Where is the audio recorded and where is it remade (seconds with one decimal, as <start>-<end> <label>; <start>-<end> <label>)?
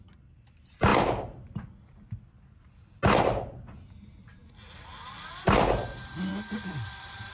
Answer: 0.0-7.3 recorded